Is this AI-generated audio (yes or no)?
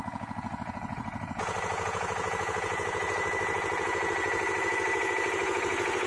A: yes